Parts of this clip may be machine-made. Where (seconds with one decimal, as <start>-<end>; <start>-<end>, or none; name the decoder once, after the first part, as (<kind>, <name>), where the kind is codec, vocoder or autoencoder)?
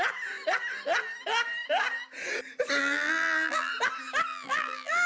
2.8-3.7 (vocoder, BigVGAN v2); 4.3-5.1